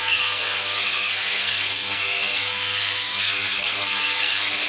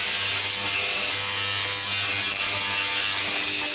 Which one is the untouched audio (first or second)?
second